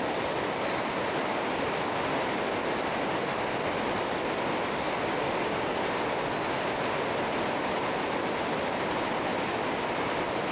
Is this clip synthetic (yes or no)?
no